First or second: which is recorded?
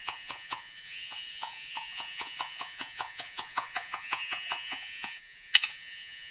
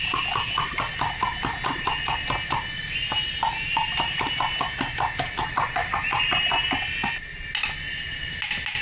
second